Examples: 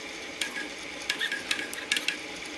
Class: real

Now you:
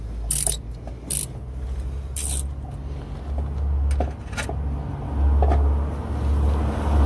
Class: real